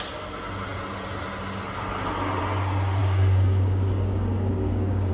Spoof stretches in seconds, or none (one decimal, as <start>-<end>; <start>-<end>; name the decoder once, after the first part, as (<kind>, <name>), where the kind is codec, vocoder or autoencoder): 3.0-5.1 (codec, DAC)